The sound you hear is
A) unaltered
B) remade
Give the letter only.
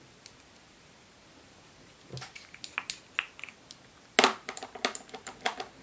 A